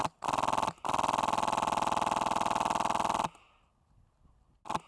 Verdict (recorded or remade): recorded